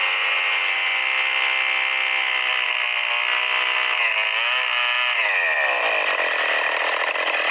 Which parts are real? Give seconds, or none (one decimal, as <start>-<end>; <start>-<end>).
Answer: 1.0-7.5

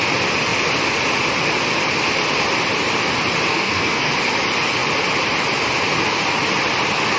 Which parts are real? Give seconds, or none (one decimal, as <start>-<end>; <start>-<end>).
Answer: 0.0-3.5; 4.1-7.2

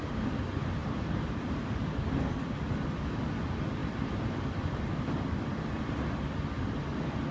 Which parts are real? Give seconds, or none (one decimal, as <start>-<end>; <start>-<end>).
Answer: 0.0-0.8; 1.7-3.8; 4.4-7.3

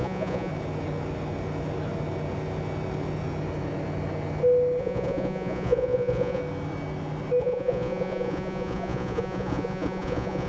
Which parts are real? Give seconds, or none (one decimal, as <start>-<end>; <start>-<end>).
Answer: 0.5-4.8; 6.4-7.4